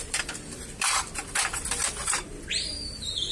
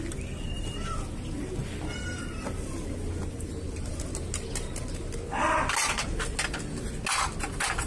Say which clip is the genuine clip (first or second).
second